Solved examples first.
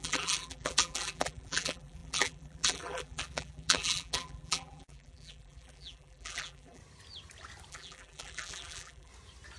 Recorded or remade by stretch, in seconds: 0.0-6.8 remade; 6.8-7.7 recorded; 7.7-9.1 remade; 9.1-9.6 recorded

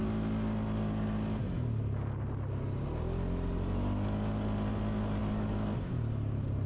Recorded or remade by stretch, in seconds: 0.0-6.7 recorded

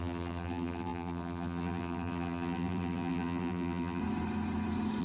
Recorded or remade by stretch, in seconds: 0.0-4.0 remade; 4.0-5.0 recorded